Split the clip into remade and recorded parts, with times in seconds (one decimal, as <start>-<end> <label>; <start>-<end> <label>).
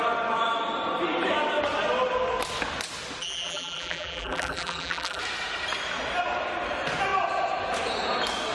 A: 0.0-3.2 recorded; 3.2-5.2 remade; 5.2-8.5 recorded